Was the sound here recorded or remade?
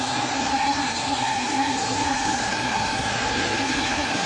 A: remade